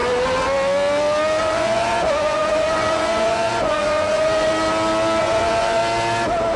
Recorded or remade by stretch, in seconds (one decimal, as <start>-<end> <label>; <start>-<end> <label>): 0.0-1.4 recorded; 1.4-4.5 remade; 4.5-5.2 recorded; 5.2-5.8 remade; 5.8-6.6 recorded